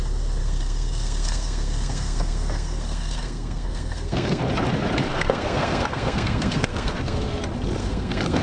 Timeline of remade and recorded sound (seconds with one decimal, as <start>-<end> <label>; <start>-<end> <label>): 0.0-0.4 recorded; 0.4-4.4 remade; 4.4-5.1 recorded; 5.1-7.3 remade; 7.3-7.8 recorded; 7.8-8.4 remade